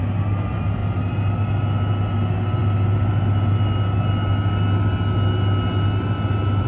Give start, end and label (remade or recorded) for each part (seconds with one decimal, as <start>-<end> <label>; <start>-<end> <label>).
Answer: 0.0-6.7 recorded